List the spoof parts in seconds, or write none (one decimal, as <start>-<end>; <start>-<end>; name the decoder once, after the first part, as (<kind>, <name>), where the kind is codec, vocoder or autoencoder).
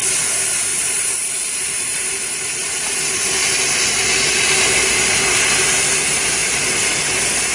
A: 0.7-3.5 (vocoder, BigVGAN v2); 6.4-7.0